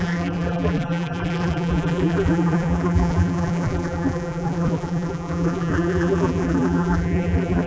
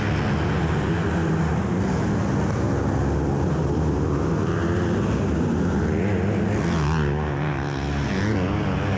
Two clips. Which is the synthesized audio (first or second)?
first